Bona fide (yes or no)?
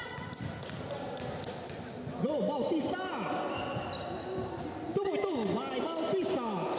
yes